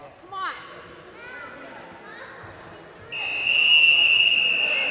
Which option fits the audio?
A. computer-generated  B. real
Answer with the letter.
B